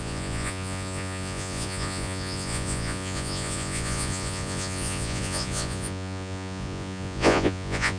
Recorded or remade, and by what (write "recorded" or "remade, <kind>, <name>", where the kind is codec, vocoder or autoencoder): remade, vocoder, Vocos